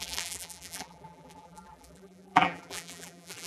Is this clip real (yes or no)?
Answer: no